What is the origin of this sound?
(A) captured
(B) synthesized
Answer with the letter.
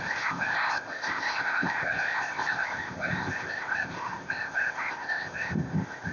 B